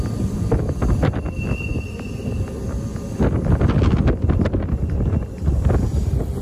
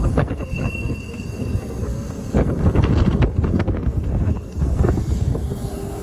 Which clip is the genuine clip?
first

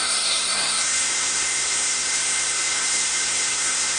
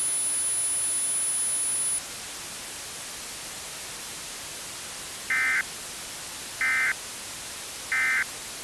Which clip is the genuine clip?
second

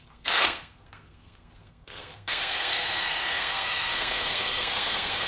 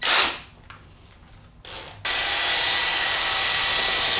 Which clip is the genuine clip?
second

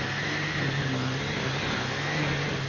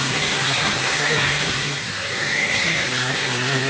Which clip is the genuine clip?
first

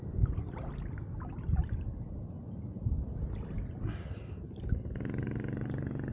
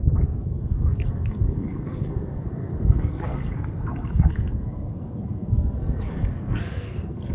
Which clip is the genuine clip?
first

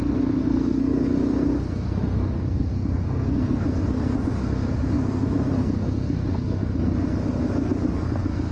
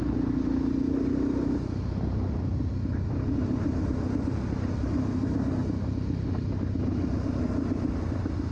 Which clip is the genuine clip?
second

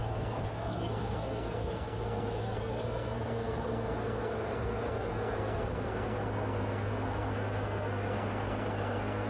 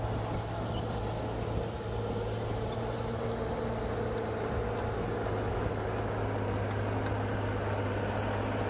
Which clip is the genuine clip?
second